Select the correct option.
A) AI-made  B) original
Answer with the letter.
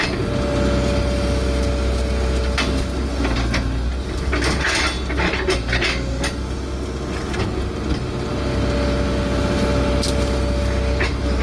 B